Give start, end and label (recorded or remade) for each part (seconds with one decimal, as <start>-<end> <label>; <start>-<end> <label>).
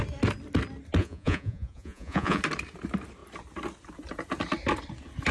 0.0-1.0 recorded; 1.0-2.4 remade; 2.4-5.3 recorded